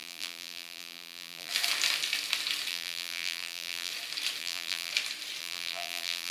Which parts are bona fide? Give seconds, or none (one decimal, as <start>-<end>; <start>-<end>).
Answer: 1.5-2.7; 3.9-4.4; 4.9-5.4